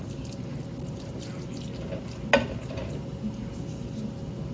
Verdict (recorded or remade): recorded